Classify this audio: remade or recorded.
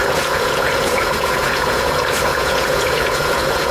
remade